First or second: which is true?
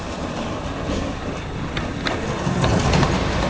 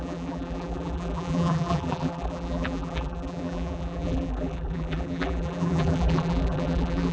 first